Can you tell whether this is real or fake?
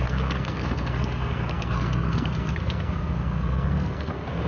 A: fake